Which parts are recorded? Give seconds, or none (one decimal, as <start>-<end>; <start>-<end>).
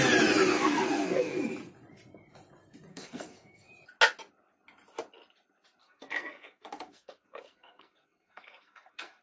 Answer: 0.0-0.5; 1.4-2.9; 3.7-5.8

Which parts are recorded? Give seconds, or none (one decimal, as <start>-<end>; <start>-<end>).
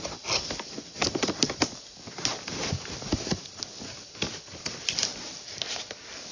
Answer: 0.0-6.3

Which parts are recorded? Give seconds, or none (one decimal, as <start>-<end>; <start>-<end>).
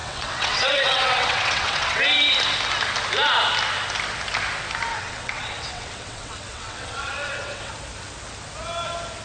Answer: 2.0-4.9; 7.7-9.2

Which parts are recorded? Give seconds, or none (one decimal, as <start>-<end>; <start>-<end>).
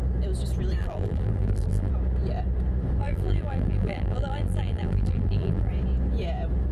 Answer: 0.0-0.8; 1.9-3.0; 5.7-6.7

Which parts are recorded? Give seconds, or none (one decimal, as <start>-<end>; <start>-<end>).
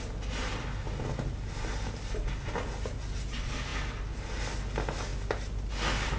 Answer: 0.0-6.2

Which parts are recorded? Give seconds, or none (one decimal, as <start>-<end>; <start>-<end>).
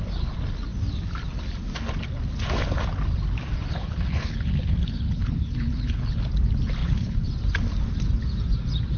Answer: 0.0-3.7; 6.3-6.8; 7.3-9.0